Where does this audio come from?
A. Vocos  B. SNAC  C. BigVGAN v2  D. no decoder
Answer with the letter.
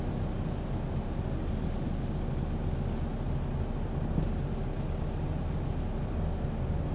D